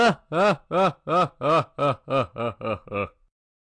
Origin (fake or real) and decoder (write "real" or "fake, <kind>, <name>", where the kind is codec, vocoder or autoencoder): real